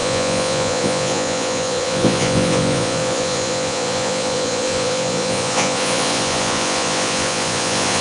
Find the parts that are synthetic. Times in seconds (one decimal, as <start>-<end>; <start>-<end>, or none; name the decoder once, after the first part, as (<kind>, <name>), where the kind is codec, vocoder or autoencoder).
0.0-8.0 (vocoder, Vocos)